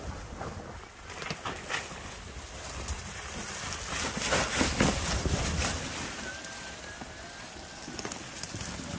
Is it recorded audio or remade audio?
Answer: recorded